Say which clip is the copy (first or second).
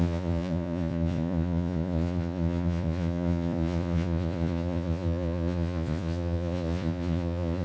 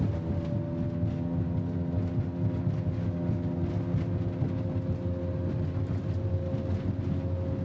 first